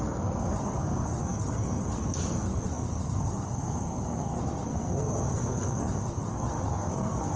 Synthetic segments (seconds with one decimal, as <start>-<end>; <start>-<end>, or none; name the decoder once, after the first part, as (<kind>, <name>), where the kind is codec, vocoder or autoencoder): 0.0-7.4 (codec, SNAC)